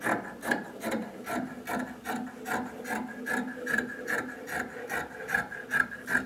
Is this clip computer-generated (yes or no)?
no